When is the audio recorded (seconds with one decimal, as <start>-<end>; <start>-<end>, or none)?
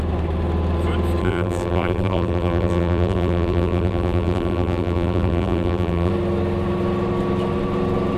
0.0-1.2; 6.1-8.2